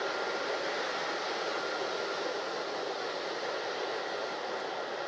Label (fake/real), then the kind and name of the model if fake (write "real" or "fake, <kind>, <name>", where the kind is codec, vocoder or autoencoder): real